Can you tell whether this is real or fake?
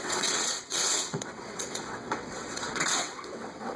fake